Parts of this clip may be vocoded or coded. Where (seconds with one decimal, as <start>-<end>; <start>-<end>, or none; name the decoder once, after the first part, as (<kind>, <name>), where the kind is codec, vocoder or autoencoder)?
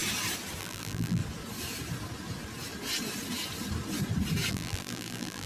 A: 0.6-1.2 (vocoder, BigVGAN v2); 4.5-5.5